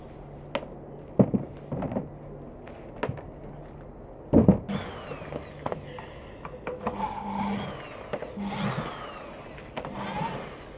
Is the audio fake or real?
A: real